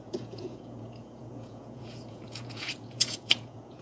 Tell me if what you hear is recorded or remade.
remade